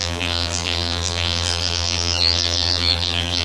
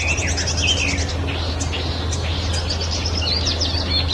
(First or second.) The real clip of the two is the second